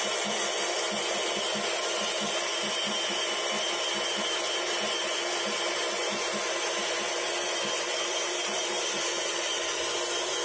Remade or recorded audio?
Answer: recorded